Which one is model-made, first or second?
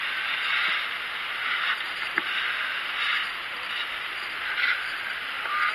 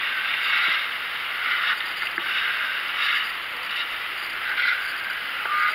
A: first